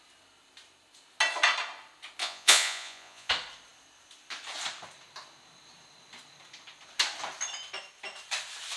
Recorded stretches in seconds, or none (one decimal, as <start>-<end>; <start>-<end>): 0.0-2.2; 3.3-8.8